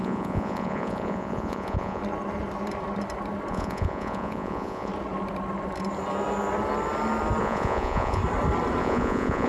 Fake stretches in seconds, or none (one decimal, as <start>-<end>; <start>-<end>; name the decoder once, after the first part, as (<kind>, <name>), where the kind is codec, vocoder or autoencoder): 0.0-2.0 (vocoder, Vocos); 3.5-4.9; 7.4-8.2; 8.8-9.5